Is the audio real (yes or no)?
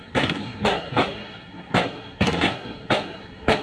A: no